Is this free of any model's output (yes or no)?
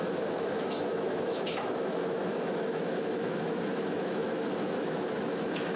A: no